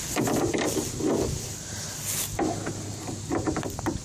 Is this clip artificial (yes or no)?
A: no